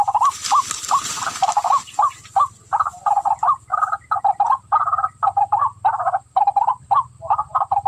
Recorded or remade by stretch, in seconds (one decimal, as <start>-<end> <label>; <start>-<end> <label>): 0.0-7.9 recorded